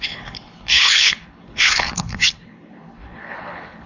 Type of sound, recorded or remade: remade